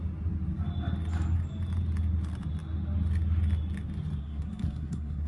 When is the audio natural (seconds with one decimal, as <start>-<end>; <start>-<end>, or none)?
0.0-4.2